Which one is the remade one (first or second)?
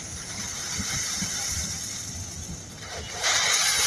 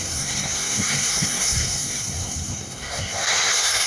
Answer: second